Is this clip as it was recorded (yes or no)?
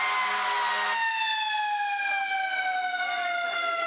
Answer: yes